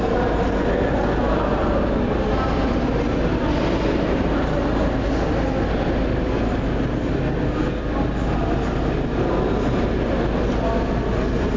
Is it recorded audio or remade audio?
recorded